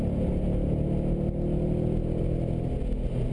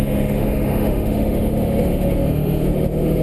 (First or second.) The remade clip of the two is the second